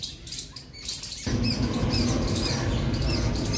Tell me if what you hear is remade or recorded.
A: recorded